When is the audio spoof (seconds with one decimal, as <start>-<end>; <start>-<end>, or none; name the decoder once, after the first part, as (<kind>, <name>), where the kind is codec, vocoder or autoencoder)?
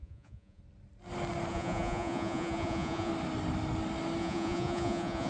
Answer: 0.0-0.6 (vocoder, Vocos); 1.5-3.1; 4.2-5.3